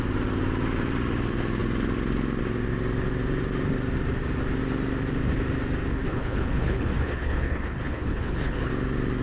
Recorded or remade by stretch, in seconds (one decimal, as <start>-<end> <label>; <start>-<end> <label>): 0.0-5.9 recorded; 5.9-8.7 remade; 8.7-9.2 recorded